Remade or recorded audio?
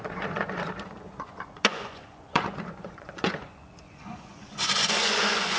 remade